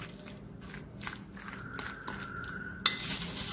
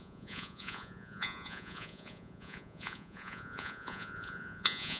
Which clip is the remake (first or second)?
second